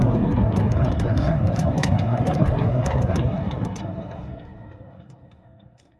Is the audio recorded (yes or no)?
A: no